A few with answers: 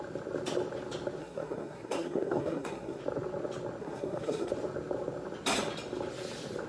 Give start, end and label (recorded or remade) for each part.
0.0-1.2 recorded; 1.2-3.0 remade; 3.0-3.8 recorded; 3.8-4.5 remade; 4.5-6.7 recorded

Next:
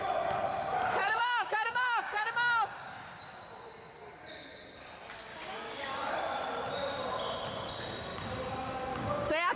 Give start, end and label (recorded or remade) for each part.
0.0-1.0 recorded; 1.0-2.9 remade; 2.9-5.3 recorded; 5.3-6.1 remade; 6.1-8.9 recorded; 8.9-9.6 remade

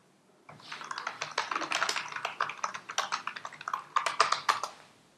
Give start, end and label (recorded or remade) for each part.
0.0-5.2 recorded

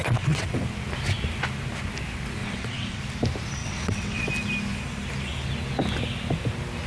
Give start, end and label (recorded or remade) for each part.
0.0-0.6 remade; 0.6-2.4 recorded; 2.4-3.0 remade; 3.0-3.6 recorded; 3.6-4.3 remade; 4.3-6.9 recorded

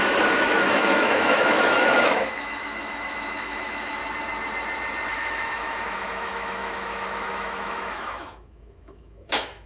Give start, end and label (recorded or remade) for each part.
0.0-4.0 remade; 4.0-5.1 recorded; 5.1-9.7 remade

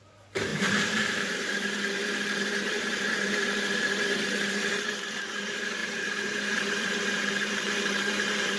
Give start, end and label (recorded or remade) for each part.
0.0-8.6 remade

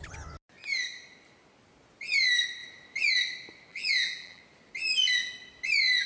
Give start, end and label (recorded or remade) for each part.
0.0-3.7 recorded; 3.7-4.4 remade; 4.4-6.1 recorded